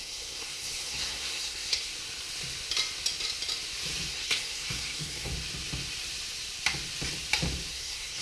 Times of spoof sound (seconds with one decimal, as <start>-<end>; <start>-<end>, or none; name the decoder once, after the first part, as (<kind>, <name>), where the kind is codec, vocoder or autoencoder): 0.0-1.9 (codec, SNAC); 4.1-5.3; 7.7-8.2